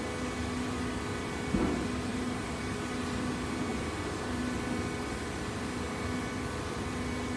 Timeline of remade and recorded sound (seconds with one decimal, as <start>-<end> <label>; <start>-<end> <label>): 0.0-2.1 recorded; 2.1-2.7 remade; 2.7-3.7 recorded; 3.7-4.4 remade; 4.4-7.4 recorded